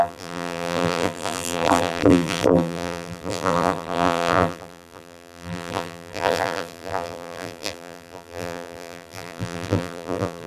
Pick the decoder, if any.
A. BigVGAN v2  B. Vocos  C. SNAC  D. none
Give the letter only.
A